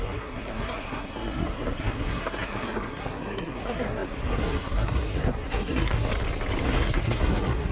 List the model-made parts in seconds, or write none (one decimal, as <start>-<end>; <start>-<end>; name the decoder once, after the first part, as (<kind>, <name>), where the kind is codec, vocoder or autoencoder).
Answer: 0.0-6.1 (codec, SNAC); 6.6-7.7